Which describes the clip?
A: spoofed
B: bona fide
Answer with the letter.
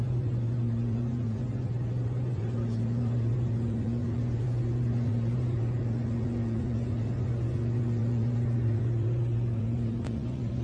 A